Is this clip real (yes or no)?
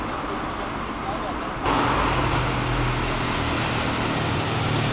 yes